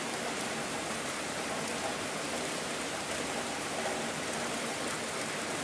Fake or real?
real